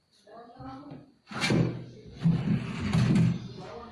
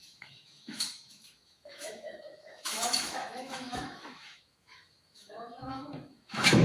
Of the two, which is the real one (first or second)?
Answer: first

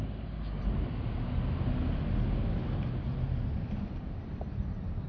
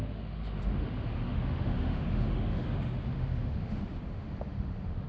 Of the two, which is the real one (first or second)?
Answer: first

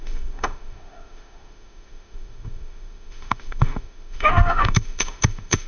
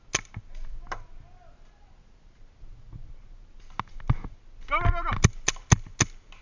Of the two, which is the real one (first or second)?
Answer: second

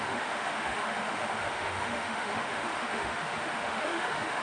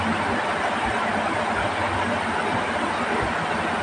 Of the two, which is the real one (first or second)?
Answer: second